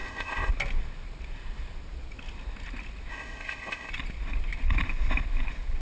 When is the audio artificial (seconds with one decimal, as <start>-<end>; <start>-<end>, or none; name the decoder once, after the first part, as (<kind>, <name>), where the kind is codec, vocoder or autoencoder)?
0.0-0.5 (codec, ZipCodec); 3.1-3.9